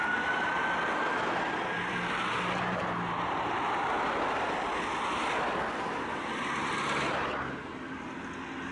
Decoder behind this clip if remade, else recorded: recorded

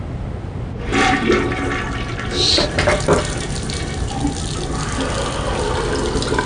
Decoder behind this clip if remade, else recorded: recorded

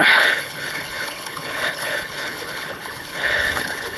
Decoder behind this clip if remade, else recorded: remade, codec, HILCodec